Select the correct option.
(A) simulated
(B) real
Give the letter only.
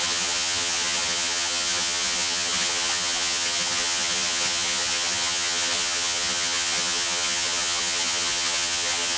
A